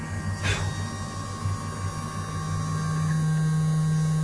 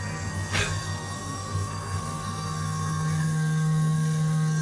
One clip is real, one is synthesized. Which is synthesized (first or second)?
second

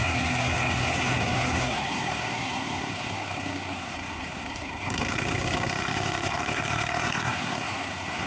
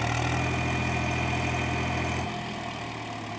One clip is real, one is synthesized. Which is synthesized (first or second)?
first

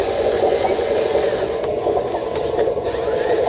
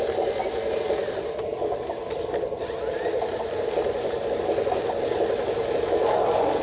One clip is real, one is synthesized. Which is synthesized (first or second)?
first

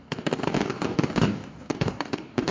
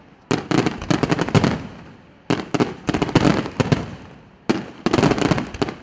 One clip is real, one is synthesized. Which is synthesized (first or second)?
first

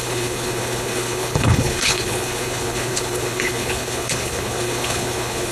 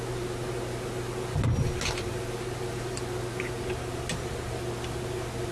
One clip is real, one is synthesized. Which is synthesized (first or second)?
first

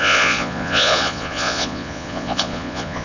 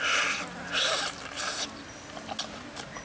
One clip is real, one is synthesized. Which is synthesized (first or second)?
first